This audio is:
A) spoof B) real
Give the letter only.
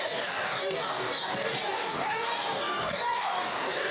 A